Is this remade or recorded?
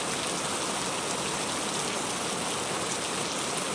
recorded